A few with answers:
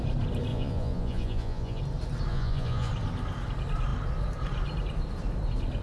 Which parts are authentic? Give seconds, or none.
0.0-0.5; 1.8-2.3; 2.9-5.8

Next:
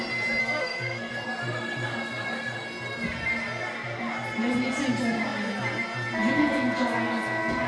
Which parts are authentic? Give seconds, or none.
0.0-0.4; 1.1-7.7

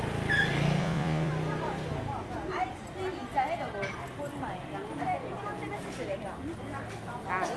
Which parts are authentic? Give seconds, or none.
0.0-0.8; 1.3-7.6

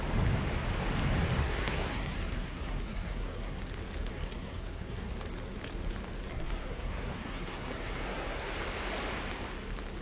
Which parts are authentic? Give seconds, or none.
0.0-1.4; 3.6-4.1; 5.1-6.3; 8.5-10.0

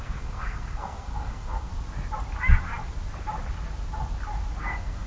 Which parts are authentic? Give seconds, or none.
1.7-4.6

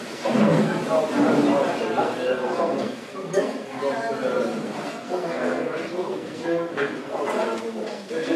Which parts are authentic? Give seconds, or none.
0.8-2.0; 3.8-4.6

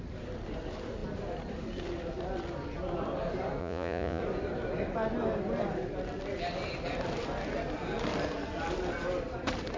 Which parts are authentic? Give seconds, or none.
0.0-3.6; 4.2-9.8

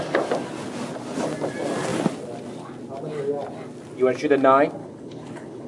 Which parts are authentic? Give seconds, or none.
0.0-4.8